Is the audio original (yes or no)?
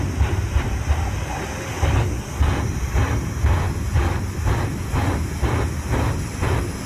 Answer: yes